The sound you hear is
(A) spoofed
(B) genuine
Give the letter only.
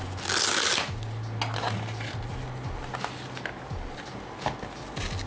B